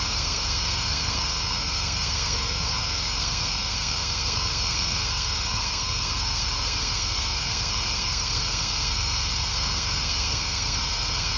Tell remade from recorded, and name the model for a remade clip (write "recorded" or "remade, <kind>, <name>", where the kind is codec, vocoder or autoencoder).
remade, codec, SNAC